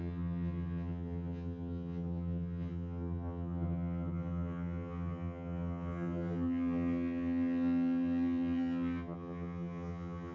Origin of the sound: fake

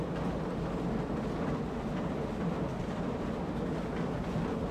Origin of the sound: real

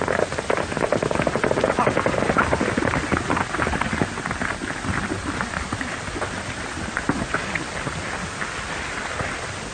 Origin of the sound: real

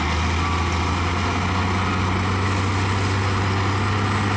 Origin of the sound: real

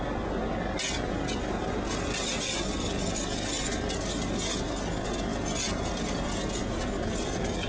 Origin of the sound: real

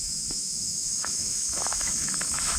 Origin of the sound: fake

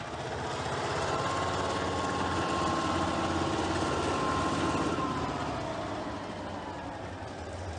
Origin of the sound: real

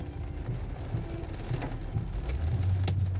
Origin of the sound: real